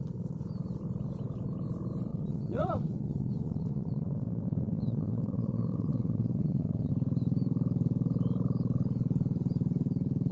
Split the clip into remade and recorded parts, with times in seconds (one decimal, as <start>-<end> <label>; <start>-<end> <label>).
0.0-2.1 recorded; 2.1-6.9 remade; 6.9-10.3 recorded